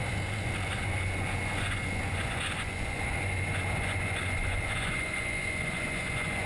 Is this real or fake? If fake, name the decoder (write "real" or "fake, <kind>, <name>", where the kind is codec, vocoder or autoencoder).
fake, vocoder, Vocos